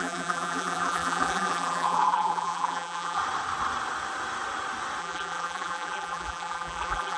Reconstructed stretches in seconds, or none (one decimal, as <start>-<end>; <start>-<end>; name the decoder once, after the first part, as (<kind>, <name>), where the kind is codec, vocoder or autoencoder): 0.0-3.2 (vocoder, BigVGAN v2); 5.0-7.2